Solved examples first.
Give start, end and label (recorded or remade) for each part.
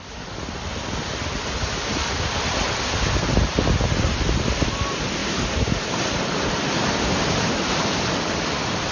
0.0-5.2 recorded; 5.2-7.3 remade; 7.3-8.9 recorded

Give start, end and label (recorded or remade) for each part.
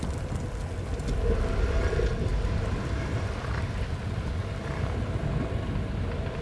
0.0-2.3 recorded; 2.3-3.6 remade; 3.6-6.4 recorded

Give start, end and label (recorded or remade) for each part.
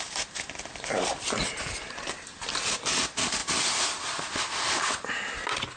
0.0-0.7 recorded; 0.7-1.4 remade; 1.4-3.4 recorded; 3.4-4.7 remade; 4.7-5.8 recorded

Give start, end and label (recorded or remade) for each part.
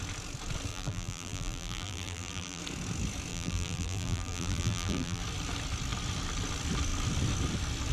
0.0-0.7 recorded; 0.7-2.6 remade; 2.6-3.3 recorded; 3.3-5.2 remade; 5.2-7.9 recorded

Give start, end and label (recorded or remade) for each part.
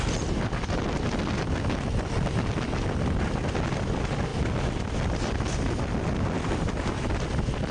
0.0-4.3 recorded; 4.3-5.4 remade; 5.4-7.7 recorded